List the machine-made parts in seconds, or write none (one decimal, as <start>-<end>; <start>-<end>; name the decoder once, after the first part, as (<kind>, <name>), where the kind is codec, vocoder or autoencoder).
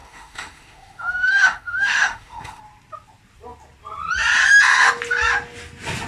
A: 0.0-2.6 (autoencoder, DAC-VAE)